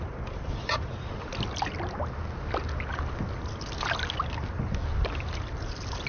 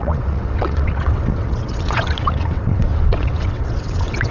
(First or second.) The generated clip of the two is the second